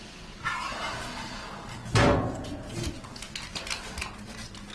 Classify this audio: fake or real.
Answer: real